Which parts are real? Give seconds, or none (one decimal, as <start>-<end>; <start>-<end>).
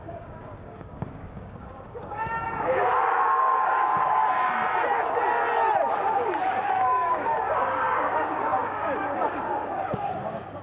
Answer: 4.2-5.9